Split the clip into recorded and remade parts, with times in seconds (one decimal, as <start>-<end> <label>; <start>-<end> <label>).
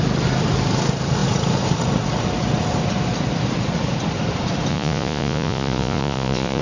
0.0-4.7 recorded; 4.7-6.6 remade